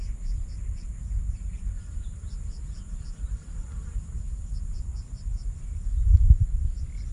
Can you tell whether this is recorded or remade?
recorded